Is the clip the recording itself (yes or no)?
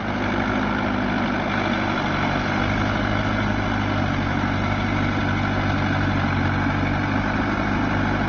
yes